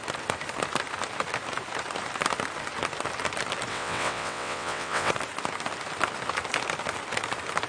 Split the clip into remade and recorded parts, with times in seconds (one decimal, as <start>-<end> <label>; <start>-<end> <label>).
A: 0.0-3.7 recorded; 3.7-5.1 remade; 5.1-7.7 recorded